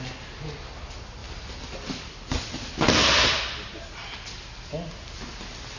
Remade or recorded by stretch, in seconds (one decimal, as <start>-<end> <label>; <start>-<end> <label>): 0.0-5.8 recorded